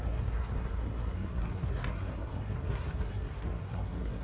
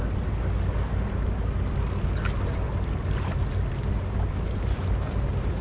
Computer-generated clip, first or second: first